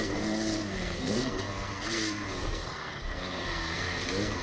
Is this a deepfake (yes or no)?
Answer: yes